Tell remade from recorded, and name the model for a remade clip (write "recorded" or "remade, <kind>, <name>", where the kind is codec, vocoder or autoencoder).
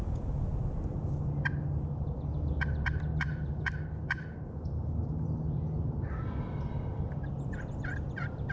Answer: recorded